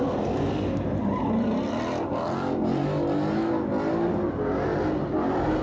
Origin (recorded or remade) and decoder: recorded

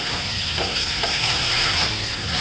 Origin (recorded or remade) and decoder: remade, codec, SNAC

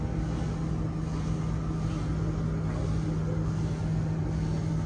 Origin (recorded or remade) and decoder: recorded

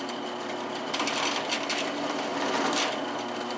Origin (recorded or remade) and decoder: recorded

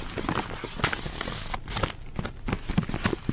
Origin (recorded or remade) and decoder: recorded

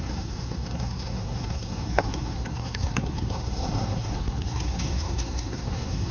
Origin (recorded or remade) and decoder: remade, codec, SNAC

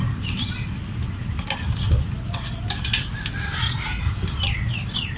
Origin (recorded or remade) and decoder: recorded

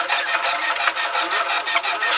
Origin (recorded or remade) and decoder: recorded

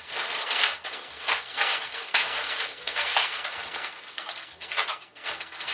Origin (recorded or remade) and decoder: remade, codec, SNAC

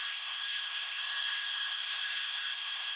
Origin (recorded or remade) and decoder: remade, codec, SNAC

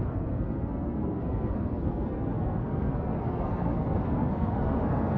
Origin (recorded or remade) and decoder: remade, codec, SNAC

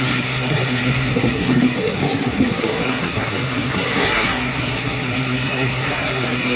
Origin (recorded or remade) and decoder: remade, codec, SNAC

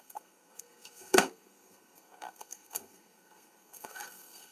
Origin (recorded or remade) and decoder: remade, codec, SNAC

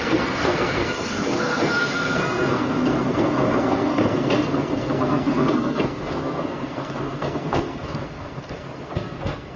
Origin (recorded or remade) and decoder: remade, codec, SNAC